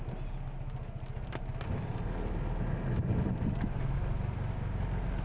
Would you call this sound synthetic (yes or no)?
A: no